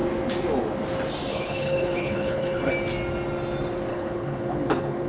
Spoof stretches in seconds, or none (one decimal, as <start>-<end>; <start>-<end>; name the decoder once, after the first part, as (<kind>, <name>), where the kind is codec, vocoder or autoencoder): 1.3-2.7 (codec, HILCodec); 3.9-5.1